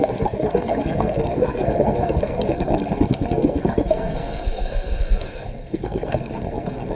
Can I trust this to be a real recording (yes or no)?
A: no